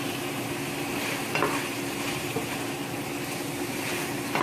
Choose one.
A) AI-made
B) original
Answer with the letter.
B